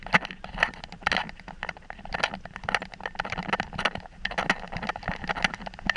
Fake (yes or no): no